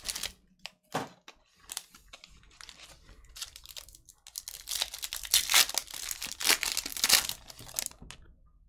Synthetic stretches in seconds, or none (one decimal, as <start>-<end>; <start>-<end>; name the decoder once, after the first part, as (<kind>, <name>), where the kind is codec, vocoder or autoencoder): none